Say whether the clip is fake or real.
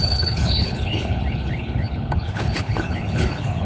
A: fake